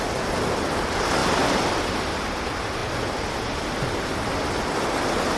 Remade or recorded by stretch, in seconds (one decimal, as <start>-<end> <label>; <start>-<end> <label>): 0.0-5.4 recorded